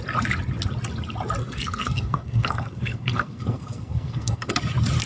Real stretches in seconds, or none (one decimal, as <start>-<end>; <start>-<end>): 0.0-1.4; 4.5-5.1